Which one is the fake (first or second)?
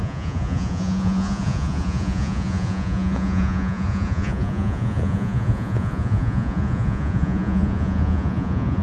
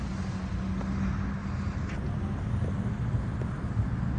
first